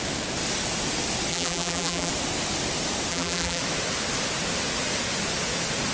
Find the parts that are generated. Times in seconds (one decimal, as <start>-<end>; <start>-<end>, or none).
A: 1.3-2.1; 3.1-3.6